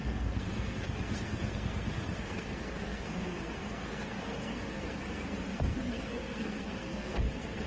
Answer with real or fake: fake